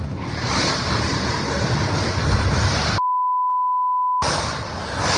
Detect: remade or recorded recorded